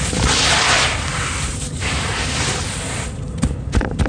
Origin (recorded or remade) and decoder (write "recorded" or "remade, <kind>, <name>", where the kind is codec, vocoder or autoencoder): recorded